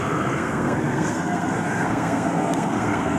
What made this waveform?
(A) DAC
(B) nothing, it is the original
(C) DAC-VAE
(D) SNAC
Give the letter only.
D